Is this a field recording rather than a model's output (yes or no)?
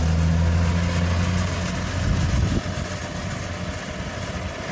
yes